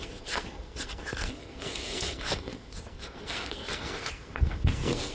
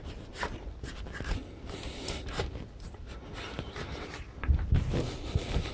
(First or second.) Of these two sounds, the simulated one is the first